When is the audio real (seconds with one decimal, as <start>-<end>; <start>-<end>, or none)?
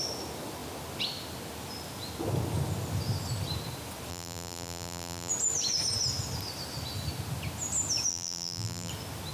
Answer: 0.0-4.1; 5.3-8.1; 8.9-9.3